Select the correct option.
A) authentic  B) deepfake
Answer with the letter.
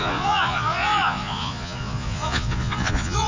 B